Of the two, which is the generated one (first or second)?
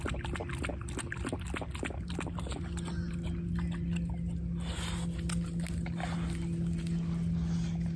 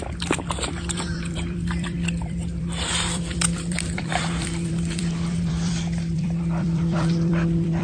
second